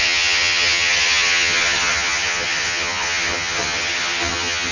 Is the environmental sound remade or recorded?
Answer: remade